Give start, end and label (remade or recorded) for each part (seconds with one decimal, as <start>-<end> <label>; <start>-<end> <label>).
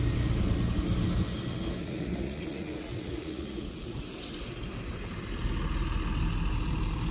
0.0-1.8 recorded; 1.8-4.0 remade; 4.0-7.1 recorded